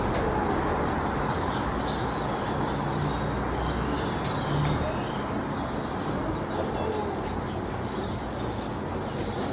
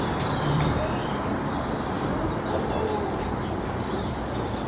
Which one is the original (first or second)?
first